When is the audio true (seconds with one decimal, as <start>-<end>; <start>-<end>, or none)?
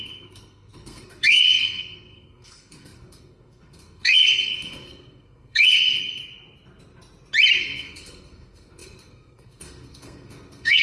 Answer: 6.2-7.6